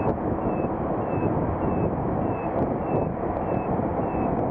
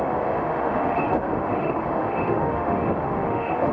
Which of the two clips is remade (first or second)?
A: second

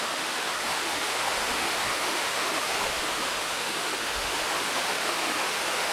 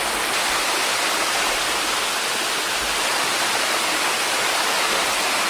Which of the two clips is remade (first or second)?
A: first